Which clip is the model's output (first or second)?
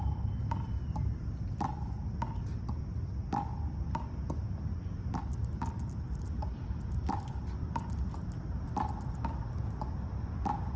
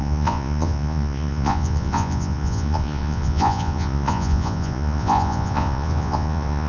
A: second